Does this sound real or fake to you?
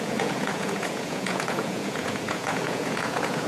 fake